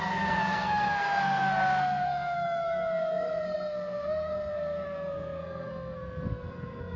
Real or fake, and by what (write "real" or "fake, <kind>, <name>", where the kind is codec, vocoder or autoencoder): fake, codec, SNAC